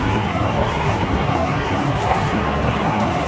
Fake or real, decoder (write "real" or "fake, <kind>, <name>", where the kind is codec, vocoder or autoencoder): fake, codec, SNAC